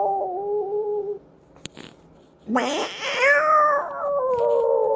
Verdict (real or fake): real